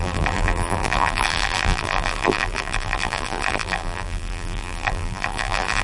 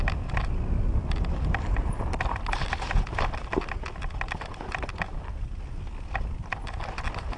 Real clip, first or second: second